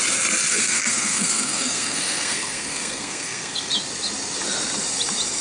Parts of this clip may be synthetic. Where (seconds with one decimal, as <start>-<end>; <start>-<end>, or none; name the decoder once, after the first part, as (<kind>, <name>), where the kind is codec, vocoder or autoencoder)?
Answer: 0.5-3.7 (codec, SNAC)